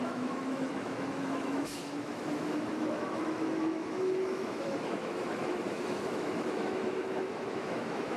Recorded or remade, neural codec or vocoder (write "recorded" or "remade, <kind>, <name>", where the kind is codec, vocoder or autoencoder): remade, autoencoder, DAC-VAE